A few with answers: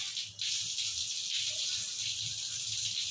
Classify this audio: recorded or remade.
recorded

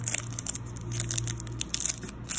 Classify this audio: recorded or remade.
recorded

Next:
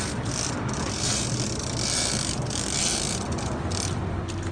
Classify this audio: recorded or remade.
recorded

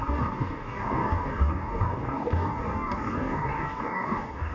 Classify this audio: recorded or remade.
remade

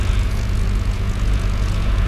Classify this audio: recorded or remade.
remade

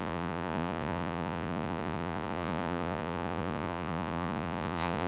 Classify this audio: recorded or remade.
remade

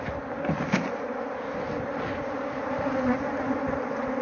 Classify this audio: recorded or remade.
recorded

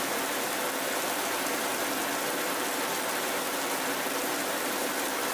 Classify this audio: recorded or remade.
remade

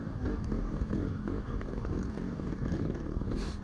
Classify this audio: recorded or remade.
remade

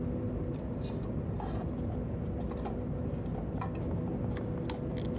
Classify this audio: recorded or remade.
recorded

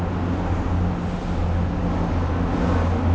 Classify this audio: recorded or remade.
recorded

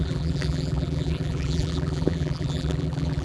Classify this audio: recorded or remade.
remade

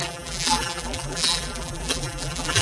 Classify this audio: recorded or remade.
remade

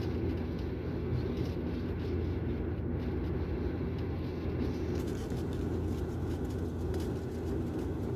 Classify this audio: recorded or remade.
recorded